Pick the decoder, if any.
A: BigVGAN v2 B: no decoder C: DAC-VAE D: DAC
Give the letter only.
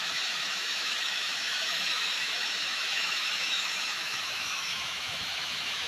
C